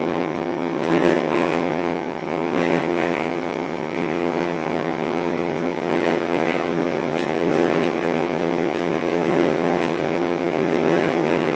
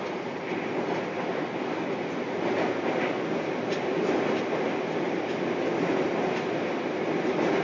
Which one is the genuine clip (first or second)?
second